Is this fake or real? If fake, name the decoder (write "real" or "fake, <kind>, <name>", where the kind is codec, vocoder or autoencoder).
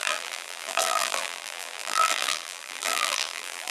fake, vocoder, BigVGAN v2